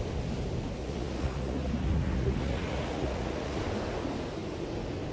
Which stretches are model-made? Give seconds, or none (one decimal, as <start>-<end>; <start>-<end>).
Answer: 0.8-3.6